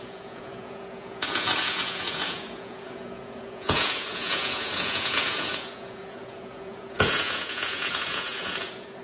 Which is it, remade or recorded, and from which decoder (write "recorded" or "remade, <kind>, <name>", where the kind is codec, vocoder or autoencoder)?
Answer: remade, vocoder, Vocos